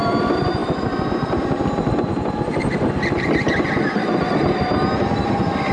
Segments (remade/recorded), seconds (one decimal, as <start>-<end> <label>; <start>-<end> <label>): 0.0-5.7 recorded